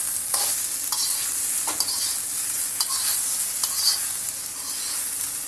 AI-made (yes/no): no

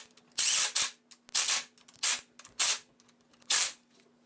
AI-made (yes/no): no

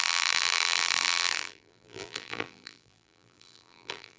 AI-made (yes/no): yes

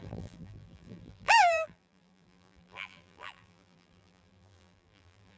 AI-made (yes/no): yes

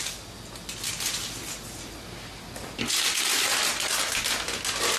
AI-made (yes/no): no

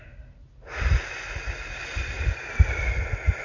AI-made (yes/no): no